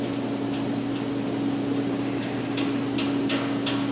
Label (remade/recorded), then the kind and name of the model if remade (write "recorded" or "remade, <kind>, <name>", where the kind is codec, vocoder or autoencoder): recorded